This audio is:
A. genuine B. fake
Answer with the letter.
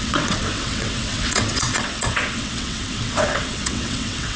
B